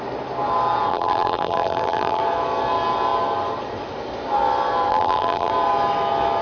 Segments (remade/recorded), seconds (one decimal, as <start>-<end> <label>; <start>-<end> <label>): 0.0-0.9 recorded; 0.9-2.2 remade; 2.2-4.9 recorded; 4.9-5.5 remade; 5.5-6.4 recorded